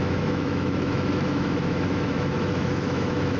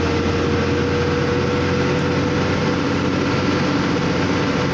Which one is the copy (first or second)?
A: first